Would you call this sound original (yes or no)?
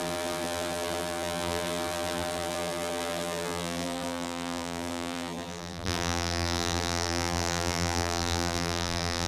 no